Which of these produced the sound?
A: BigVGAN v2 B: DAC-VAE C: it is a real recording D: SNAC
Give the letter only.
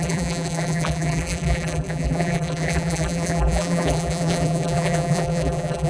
A